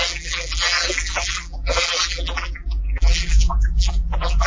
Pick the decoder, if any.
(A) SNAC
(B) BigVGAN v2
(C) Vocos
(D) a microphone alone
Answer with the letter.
B